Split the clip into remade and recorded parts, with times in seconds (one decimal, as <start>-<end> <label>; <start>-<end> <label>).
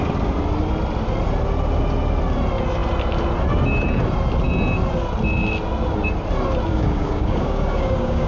0.0-6.7 recorded; 6.7-8.3 remade